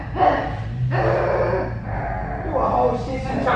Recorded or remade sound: recorded